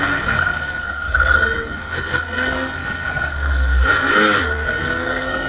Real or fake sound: fake